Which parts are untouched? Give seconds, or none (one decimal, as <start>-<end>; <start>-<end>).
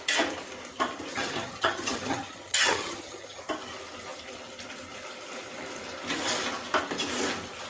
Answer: 0.0-1.1; 3.4-7.7